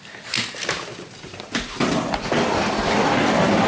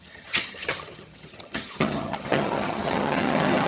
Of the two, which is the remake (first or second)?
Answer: second